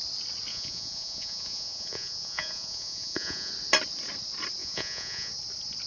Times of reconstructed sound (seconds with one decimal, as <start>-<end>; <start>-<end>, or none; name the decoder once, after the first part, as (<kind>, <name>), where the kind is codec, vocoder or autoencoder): 0.5-3.5 (vocoder, Vocos); 4.6-5.3